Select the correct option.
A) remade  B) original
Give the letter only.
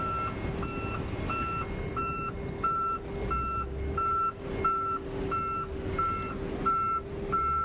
B